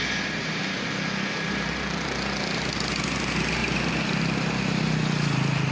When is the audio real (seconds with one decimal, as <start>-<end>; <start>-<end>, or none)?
0.0-5.7